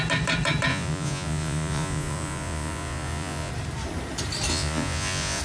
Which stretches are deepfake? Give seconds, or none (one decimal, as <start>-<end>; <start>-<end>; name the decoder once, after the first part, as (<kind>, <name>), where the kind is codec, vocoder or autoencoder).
0.7-3.5 (vocoder, Vocos); 4.5-5.4